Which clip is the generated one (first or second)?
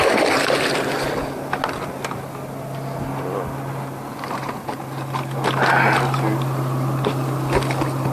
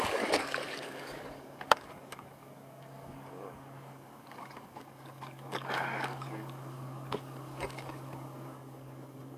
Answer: second